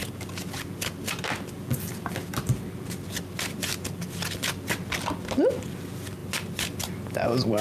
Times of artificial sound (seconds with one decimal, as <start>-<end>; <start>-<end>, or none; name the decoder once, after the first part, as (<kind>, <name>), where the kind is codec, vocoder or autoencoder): none